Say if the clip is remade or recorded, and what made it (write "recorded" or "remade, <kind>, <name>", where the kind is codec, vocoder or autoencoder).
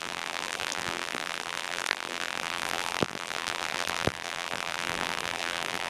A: remade, vocoder, BigVGAN v2